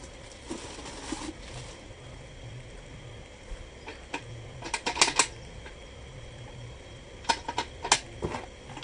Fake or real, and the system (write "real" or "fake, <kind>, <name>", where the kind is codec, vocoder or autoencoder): real